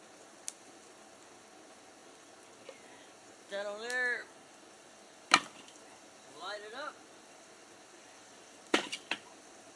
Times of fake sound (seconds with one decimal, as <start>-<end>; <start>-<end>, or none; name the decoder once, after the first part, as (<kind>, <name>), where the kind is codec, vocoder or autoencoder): 4.2-9.3 (vocoder, BigVGAN v2)